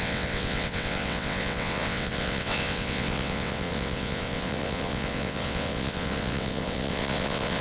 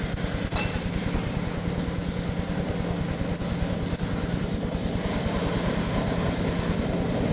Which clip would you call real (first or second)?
second